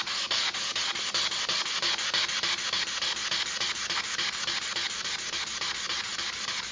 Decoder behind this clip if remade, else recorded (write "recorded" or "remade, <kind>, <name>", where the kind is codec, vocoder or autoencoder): recorded